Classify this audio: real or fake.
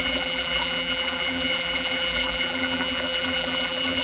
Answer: fake